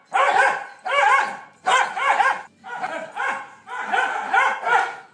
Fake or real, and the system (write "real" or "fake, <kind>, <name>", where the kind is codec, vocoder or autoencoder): real